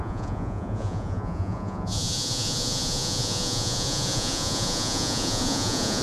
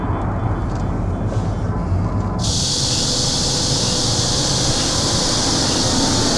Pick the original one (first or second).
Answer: second